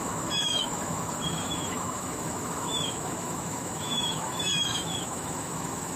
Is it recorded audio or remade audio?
remade